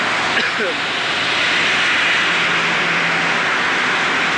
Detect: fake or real real